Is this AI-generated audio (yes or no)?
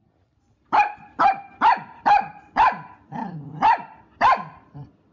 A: yes